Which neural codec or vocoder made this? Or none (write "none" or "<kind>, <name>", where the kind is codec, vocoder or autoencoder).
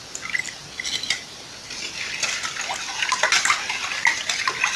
none